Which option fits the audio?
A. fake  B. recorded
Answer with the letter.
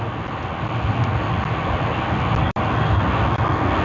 B